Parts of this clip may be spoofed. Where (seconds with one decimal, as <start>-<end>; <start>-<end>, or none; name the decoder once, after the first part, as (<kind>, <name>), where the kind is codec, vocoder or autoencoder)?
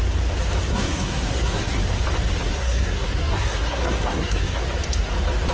0.7-1.8 (codec, SNAC); 2.5-4.6